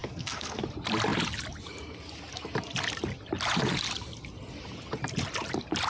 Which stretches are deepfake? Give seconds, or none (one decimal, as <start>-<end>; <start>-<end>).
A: 0.0-0.6